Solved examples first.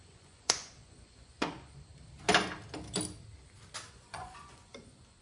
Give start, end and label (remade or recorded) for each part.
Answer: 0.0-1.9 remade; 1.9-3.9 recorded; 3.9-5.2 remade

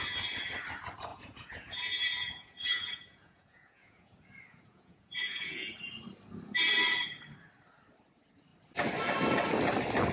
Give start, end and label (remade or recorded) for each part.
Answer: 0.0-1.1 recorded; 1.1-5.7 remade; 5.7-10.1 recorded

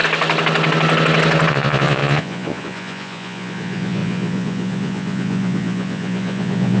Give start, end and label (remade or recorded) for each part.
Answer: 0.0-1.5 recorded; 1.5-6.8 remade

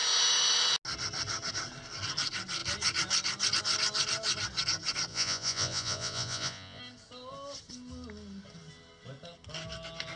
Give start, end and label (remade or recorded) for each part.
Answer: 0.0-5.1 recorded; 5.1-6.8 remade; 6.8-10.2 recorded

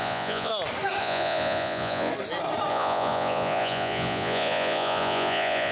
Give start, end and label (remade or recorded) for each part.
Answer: 0.0-0.5 remade; 0.5-1.0 recorded; 1.0-2.1 remade; 2.1-2.7 recorded; 2.7-5.7 remade